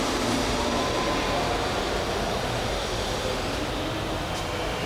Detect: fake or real real